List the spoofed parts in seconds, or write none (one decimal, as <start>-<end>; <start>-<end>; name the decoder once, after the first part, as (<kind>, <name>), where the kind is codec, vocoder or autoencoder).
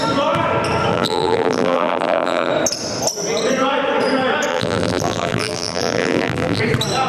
0.9-2.5 (vocoder, BigVGAN v2); 4.5-6.6